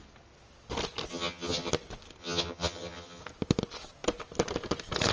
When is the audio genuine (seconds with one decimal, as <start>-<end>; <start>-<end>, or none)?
0.0-1.1; 1.7-2.2; 3.2-5.1